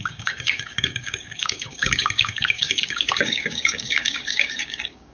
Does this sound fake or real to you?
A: fake